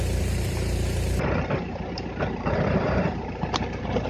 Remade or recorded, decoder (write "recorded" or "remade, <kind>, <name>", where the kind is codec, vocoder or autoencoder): remade, vocoder, BigVGAN v2